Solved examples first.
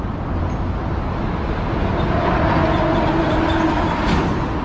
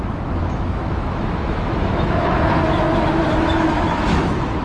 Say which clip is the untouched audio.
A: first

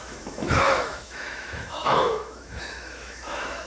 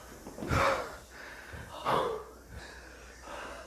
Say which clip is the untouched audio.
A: second